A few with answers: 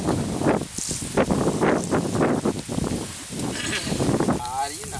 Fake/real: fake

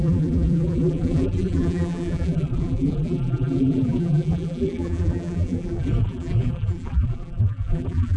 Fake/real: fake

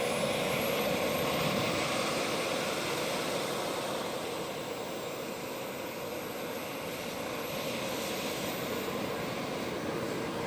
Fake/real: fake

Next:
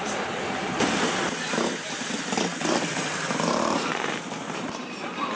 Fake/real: fake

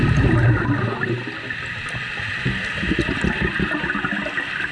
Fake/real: real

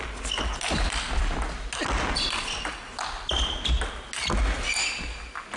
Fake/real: real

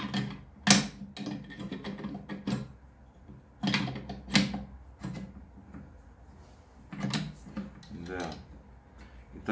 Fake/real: real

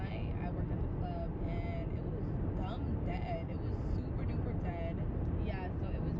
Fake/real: real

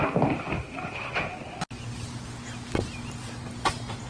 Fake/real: real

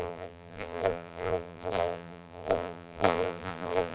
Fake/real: fake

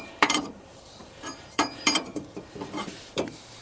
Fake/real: fake